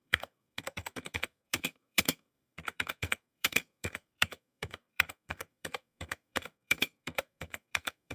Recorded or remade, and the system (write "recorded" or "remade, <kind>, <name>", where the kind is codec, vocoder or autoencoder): remade, codec, SNAC